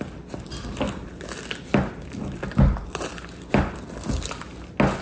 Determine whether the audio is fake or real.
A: real